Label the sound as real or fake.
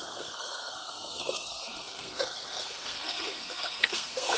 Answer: fake